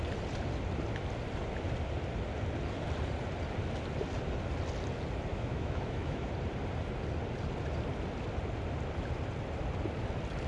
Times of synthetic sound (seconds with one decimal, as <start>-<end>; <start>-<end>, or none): 5.3-6.3